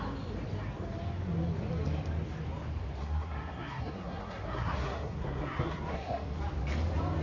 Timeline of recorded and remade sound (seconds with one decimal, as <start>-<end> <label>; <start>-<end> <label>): 0.0-3.0 recorded; 3.0-6.4 remade; 6.4-7.2 recorded